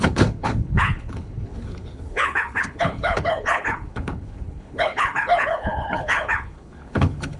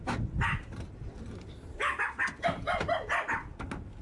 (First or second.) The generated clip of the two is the first